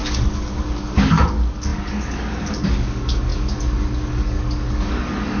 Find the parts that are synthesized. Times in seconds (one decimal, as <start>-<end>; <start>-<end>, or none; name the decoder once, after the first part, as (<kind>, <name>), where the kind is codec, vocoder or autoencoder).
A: 0.0-5.4 (codec, DAC)